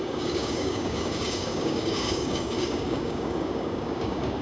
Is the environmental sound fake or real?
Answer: fake